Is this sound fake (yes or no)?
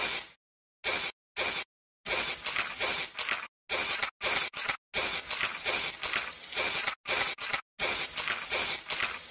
no